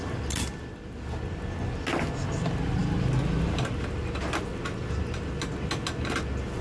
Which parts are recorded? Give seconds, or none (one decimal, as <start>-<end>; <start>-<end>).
0.0-6.6